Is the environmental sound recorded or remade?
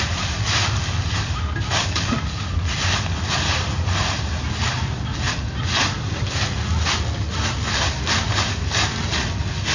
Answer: recorded